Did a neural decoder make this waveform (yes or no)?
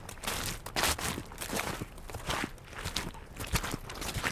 no